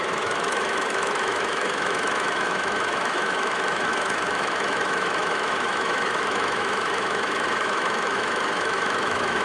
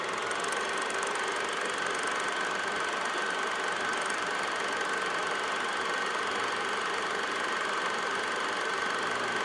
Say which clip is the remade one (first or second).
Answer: first